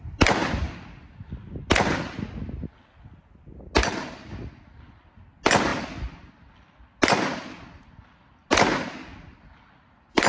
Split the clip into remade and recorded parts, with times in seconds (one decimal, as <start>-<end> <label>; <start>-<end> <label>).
0.0-0.4 recorded; 0.4-1.3 remade; 1.3-3.8 recorded; 3.8-4.3 remade; 4.3-10.3 recorded